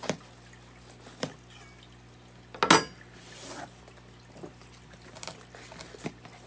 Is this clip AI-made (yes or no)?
no